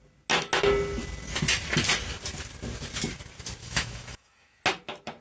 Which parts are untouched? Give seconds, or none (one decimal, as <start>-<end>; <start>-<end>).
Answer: 0.0-3.6; 4.6-5.2